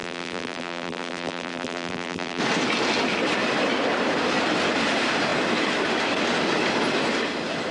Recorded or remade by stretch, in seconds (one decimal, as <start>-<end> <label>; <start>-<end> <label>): 0.0-2.4 remade; 2.4-7.7 recorded